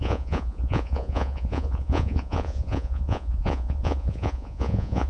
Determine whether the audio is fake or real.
fake